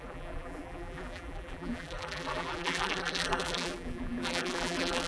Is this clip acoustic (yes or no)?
no